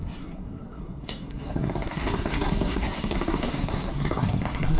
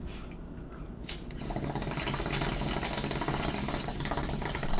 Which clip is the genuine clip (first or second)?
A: second